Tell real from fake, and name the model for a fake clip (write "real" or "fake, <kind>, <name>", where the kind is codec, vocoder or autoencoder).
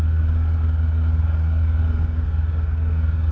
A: fake, codec, SNAC